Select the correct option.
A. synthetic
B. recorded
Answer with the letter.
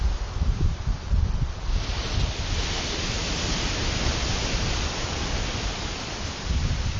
B